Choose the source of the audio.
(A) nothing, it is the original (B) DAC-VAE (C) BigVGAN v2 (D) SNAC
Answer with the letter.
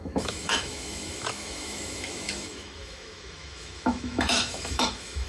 B